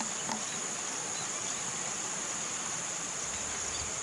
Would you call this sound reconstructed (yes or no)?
yes